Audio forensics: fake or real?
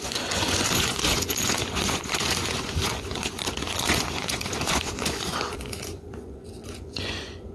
fake